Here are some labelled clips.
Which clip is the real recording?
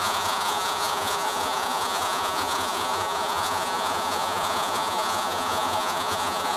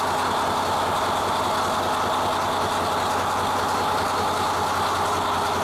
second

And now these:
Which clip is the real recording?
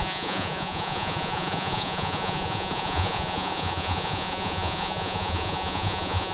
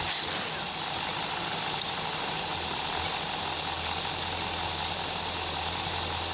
second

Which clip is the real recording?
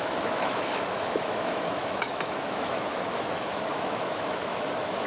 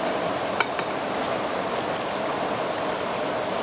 second